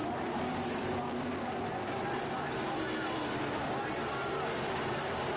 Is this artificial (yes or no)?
yes